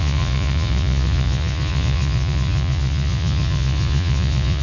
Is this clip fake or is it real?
fake